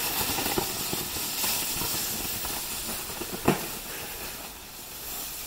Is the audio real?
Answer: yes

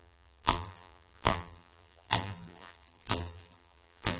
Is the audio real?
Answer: no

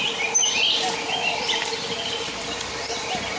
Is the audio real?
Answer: yes